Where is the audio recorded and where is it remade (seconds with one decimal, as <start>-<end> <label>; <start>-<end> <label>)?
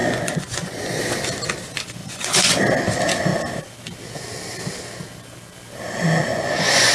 0.0-1.0 remade; 1.0-2.0 recorded; 2.0-2.6 remade; 2.6-6.3 recorded; 6.3-6.9 remade